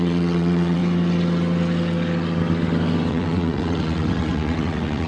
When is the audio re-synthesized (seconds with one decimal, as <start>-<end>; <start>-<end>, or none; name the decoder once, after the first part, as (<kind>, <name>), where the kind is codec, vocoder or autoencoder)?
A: 0.0-0.8 (vocoder, WaveNeXt); 3.1-5.1